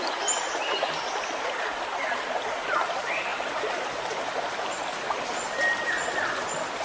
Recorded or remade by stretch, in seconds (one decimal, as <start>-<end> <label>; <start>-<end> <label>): 0.0-6.8 recorded